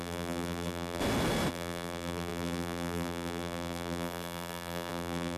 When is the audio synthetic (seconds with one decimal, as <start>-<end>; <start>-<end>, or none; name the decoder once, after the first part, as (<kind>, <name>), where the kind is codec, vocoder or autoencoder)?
0.0-1.0 (vocoder, BigVGAN v2); 1.5-5.4